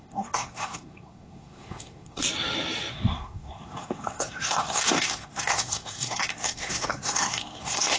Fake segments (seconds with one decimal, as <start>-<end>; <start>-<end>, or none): 0.0-2.2; 2.9-8.0